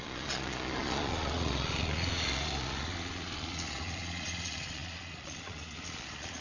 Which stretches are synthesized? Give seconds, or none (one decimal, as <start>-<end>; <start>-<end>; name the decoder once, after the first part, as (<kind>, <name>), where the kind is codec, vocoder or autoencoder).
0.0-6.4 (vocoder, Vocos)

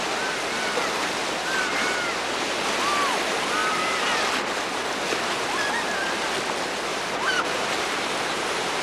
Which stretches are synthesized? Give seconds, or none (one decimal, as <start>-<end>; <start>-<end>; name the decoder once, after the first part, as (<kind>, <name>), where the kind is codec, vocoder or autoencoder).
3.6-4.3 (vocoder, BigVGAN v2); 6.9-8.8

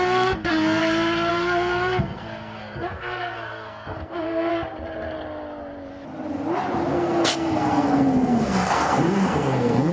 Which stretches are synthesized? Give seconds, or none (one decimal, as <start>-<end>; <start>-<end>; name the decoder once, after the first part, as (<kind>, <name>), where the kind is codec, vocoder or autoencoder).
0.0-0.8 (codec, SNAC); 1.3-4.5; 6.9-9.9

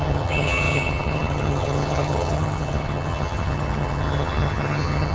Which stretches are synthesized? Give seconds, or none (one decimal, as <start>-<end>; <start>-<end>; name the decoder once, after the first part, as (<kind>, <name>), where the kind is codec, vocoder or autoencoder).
0.0-5.1 (vocoder, HiFi-GAN)

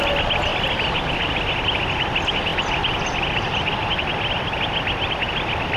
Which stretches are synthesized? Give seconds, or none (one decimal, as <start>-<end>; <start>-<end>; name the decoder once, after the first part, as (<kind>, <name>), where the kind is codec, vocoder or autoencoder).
none

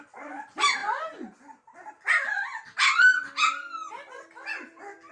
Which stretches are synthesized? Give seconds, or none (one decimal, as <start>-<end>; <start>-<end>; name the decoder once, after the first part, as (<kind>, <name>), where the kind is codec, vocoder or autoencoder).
none

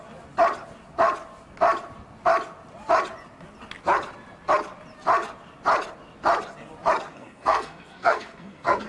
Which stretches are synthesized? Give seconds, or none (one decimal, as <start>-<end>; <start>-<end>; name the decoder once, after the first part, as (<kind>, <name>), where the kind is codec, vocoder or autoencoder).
7.1-8.9 (codec, SNAC)